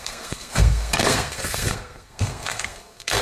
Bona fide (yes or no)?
no